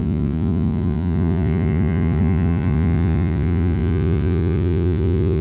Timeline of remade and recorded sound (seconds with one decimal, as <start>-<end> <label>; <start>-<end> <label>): 0.0-5.4 remade